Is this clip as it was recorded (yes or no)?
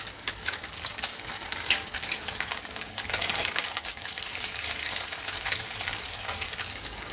no